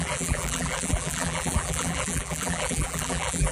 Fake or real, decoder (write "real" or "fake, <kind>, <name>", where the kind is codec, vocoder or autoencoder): fake, vocoder, BigVGAN v2